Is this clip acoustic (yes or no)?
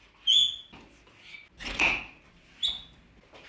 yes